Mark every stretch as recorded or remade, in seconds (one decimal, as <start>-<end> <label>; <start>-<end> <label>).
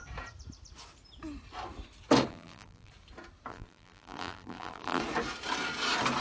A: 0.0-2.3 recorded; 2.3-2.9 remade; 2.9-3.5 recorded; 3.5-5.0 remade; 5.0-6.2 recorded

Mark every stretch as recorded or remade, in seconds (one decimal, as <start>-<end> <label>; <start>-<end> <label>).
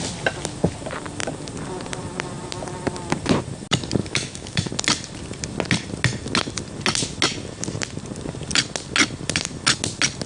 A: 0.0-4.0 recorded; 4.0-4.7 remade; 4.7-10.3 recorded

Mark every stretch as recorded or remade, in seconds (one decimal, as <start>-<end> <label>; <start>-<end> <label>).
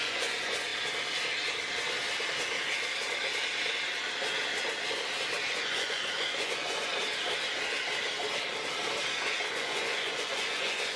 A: 0.0-0.7 remade; 0.7-5.5 recorded; 5.5-6.9 remade; 6.9-9.5 recorded; 9.5-11.0 remade